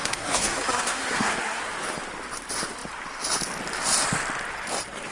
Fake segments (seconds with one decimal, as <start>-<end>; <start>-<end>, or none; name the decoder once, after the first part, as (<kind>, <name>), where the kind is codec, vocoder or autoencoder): 0.0-1.6 (codec, SNAC)